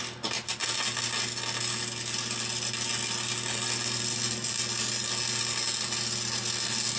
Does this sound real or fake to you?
real